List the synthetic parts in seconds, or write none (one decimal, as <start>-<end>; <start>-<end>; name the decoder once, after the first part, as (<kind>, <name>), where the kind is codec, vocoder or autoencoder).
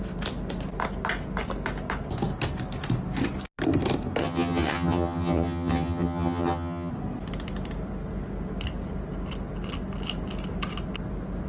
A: 4.2-6.9 (vocoder, HiFi-GAN)